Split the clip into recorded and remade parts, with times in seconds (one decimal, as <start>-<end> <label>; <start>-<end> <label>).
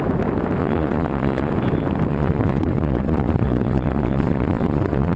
0.0-0.6 recorded; 0.6-1.5 remade; 1.5-2.1 recorded; 2.1-5.2 remade